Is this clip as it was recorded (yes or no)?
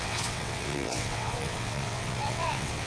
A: no